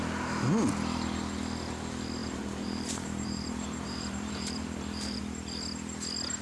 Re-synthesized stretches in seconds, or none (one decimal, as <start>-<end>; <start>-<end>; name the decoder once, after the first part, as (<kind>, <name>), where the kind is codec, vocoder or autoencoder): 2.2-5.2 (vocoder, BigVGAN v2)